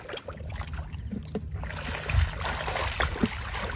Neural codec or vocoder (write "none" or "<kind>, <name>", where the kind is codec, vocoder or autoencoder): none